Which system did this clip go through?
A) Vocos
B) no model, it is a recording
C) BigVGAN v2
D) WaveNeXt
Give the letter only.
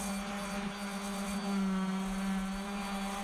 B